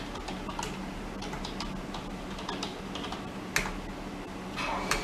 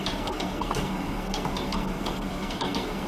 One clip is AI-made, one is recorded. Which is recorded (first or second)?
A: first